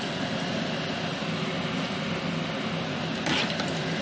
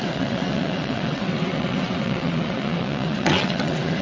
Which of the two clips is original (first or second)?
first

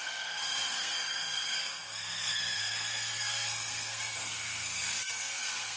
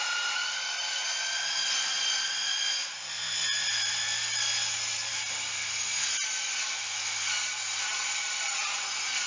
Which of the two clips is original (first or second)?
second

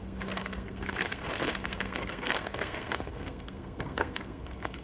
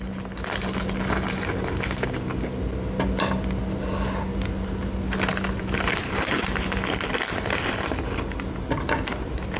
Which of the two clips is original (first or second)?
second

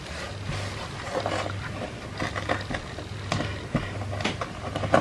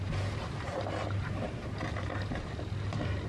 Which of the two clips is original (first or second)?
first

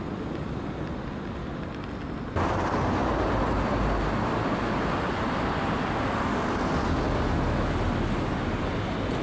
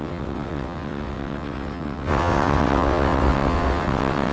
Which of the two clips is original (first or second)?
first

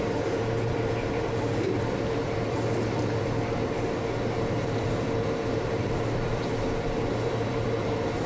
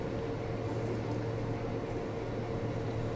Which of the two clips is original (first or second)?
second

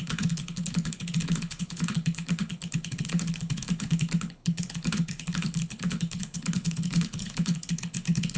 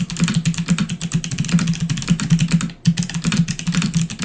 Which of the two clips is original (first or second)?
second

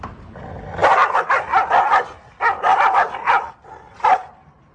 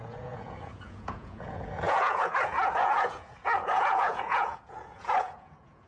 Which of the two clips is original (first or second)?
first